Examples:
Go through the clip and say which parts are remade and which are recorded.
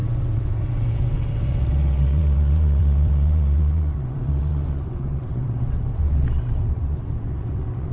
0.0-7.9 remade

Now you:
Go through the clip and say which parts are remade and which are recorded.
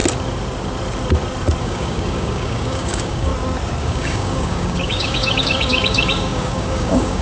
0.0-1.6 recorded; 1.6-3.3 remade; 3.3-3.8 recorded; 3.8-7.2 remade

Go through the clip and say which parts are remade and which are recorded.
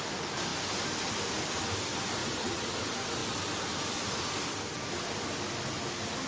0.0-2.2 recorded; 2.2-2.8 remade; 2.8-6.3 recorded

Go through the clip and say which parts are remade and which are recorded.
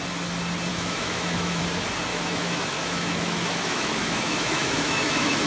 0.0-0.7 recorded; 0.7-1.6 remade; 1.6-2.1 recorded; 2.1-5.5 remade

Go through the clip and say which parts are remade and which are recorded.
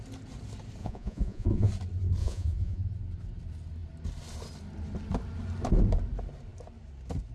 0.0-0.8 recorded; 0.8-1.7 remade; 1.7-2.2 recorded; 2.2-2.8 remade; 2.8-7.3 recorded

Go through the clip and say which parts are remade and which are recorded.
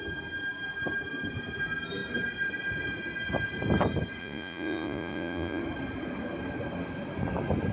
0.0-4.2 recorded; 4.2-5.6 remade; 5.6-7.7 recorded